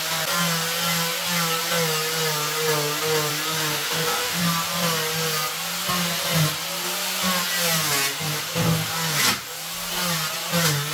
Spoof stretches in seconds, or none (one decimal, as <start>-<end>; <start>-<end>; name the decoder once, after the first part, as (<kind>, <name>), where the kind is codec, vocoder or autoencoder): 3.7-4.4 (autoencoder, DAC-VAE)